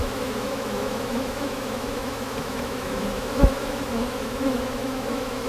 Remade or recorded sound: remade